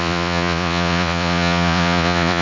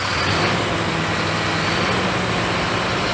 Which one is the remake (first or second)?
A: first